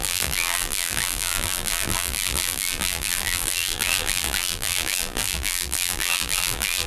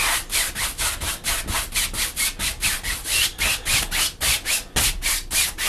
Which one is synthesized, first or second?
first